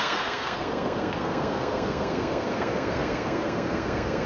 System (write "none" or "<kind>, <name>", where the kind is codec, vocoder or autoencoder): codec, SNAC